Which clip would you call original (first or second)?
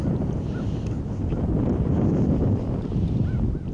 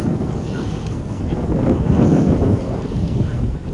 first